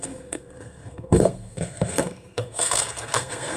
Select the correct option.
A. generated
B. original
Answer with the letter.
A